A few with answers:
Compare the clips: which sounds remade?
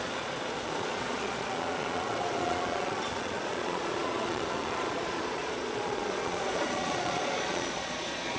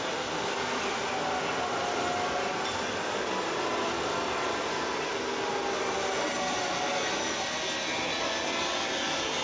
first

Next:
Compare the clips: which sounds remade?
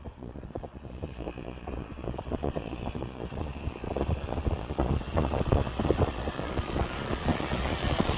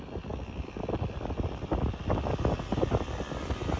first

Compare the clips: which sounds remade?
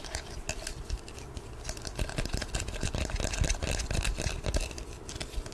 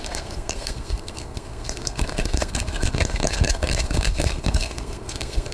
second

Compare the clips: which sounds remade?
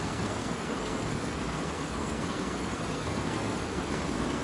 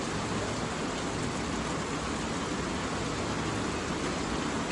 first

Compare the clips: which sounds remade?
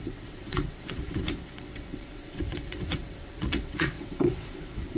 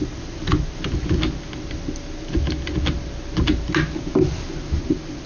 first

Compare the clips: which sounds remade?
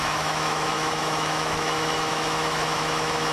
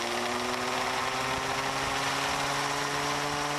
first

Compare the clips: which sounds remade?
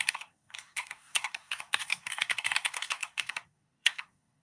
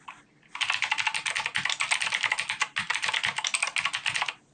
first